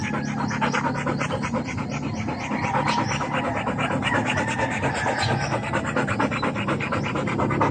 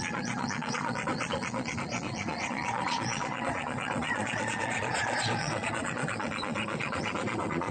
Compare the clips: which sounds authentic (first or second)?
first